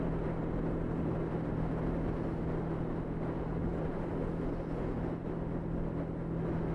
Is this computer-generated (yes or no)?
no